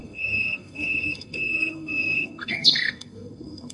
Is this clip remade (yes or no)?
yes